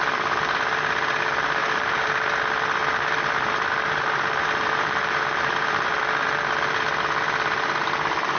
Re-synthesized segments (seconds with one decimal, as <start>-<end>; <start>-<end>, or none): 1.6-2.1; 2.8-6.0